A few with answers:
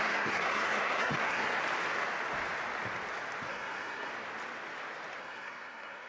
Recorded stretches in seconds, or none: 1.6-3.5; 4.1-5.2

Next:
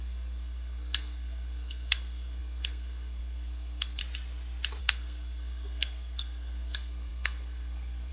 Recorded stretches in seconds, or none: 4.0-4.8

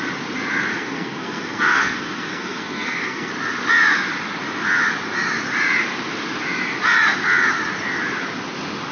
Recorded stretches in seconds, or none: 0.0-0.7; 3.3-8.9

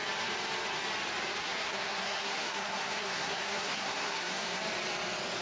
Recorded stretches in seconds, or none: 0.0-1.4; 4.6-5.4

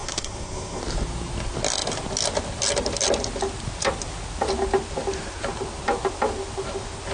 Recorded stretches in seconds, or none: 0.8-7.1

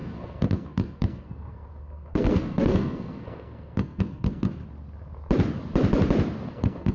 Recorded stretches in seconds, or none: 4.6-6.5